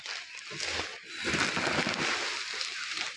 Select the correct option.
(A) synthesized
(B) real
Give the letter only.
B